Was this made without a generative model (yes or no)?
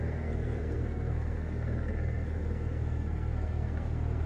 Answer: no